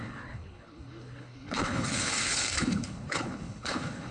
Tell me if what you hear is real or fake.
fake